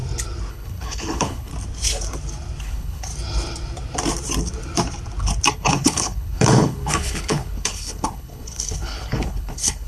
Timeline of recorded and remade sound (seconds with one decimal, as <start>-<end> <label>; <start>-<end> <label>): 0.0-0.5 recorded; 0.5-1.5 remade; 1.5-2.6 recorded; 2.6-3.1 remade; 3.1-5.5 recorded; 5.5-9.9 remade